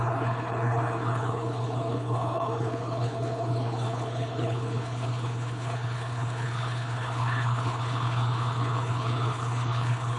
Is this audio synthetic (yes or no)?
yes